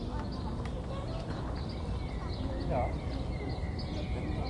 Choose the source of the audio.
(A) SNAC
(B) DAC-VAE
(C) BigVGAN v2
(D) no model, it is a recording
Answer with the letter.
D